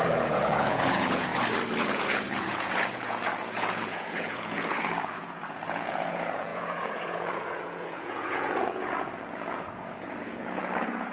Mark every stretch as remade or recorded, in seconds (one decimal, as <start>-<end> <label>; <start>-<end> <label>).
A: 0.0-1.3 remade; 1.3-1.8 recorded; 1.8-11.1 remade